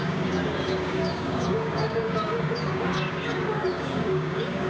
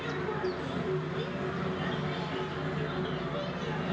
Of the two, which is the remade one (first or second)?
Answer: first